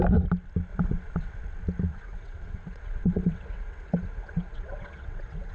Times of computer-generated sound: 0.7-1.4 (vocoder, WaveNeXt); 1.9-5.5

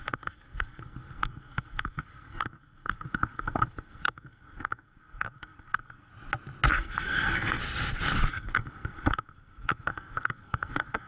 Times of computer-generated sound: 0.0-6.1 (codec, SNAC); 6.7-7.6; 8.3-11.1

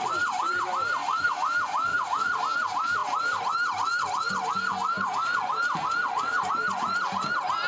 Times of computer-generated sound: 1.0-1.5 (vocoder, Vocos); 1.9-2.4

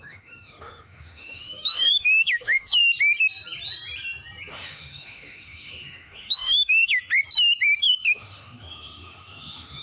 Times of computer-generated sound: 0.0-2.8 (autoencoder, DAC-VAE); 4.5-7.0; 7.8-9.8

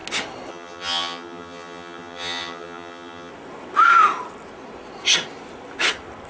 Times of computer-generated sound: 0.5-3.3 (vocoder, HiFi-GAN)

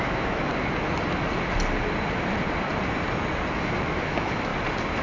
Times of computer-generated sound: 0.0-0.5 (autoencoder, DAC-VAE); 3.5-4.5